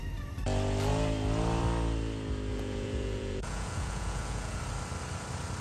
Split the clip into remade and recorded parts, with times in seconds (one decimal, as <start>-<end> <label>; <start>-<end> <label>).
0.0-2.5 recorded; 2.5-4.6 remade; 4.6-5.6 recorded